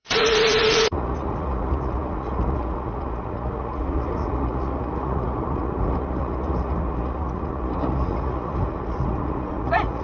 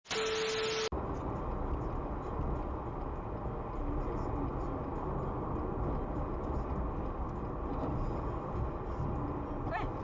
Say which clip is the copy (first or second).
first